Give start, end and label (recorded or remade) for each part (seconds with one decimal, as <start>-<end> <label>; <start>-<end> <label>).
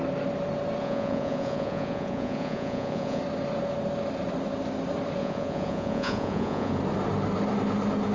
0.0-0.8 recorded; 0.8-3.2 remade; 3.2-5.2 recorded; 5.2-6.8 remade; 6.8-8.1 recorded